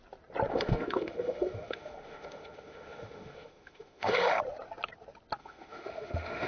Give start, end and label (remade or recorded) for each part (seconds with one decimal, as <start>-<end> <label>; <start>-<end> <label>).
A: 0.0-0.5 recorded; 0.5-4.4 remade; 4.4-5.4 recorded; 5.4-6.5 remade